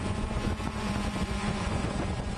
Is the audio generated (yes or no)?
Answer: yes